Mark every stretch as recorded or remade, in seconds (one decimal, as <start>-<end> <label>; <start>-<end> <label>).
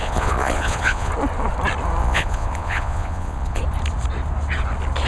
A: 0.0-1.1 remade; 1.1-2.0 recorded; 2.0-3.6 remade; 3.6-5.1 recorded